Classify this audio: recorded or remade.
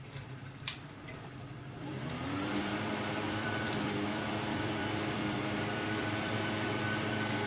remade